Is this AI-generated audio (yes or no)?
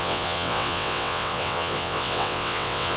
yes